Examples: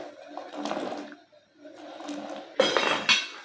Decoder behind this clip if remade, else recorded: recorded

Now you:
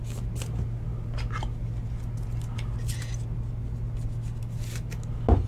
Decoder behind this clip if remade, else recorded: recorded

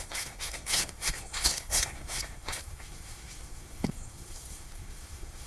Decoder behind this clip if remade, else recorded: remade, codec, SNAC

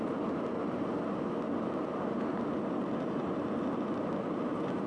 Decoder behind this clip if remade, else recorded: recorded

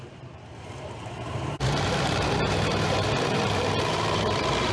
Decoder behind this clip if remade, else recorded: remade, vocoder, BigVGAN v2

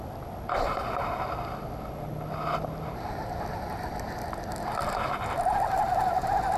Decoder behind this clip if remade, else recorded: recorded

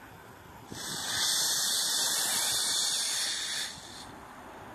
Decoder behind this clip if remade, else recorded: recorded